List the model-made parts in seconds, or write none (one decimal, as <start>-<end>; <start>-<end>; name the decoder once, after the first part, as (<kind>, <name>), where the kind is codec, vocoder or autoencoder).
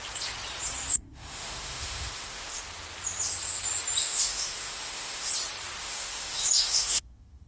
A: 0.9-2.6 (autoencoder, DAC-VAE); 4.0-5.3; 5.8-7.5